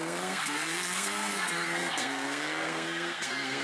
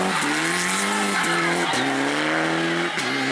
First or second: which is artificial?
first